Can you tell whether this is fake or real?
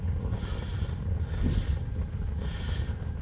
real